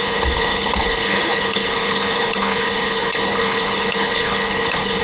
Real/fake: fake